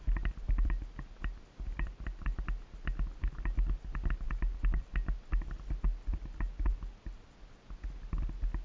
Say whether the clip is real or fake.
real